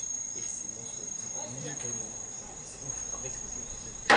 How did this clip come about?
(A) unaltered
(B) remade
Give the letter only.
B